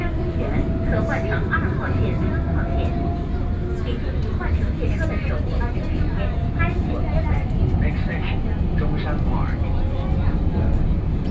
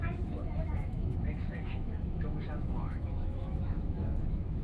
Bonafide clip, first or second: first